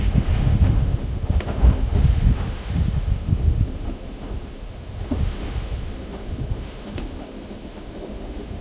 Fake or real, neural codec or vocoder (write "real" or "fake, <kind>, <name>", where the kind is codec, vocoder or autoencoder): fake, autoencoder, DAC-VAE